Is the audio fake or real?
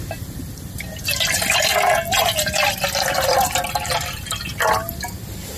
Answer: real